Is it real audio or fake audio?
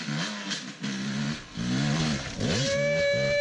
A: real